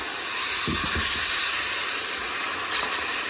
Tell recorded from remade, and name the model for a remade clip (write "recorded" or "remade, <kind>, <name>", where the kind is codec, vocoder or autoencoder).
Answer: recorded